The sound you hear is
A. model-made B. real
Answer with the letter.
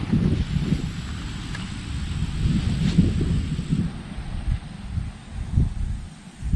B